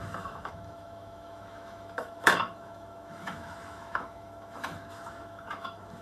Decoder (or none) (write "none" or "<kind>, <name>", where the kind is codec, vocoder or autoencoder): autoencoder, DAC-VAE